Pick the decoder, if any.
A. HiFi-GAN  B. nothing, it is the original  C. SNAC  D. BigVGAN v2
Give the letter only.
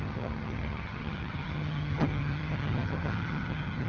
A